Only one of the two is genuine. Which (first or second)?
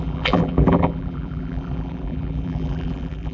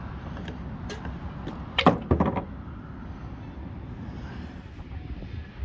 second